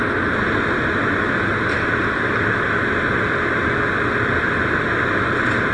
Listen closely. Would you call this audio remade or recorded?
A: recorded